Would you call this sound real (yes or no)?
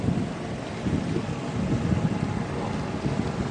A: yes